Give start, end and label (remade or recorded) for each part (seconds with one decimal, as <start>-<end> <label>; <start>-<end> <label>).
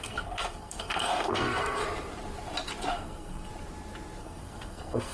0.0-1.8 remade; 1.8-2.9 recorded; 2.9-3.5 remade; 3.5-4.2 recorded; 4.2-5.1 remade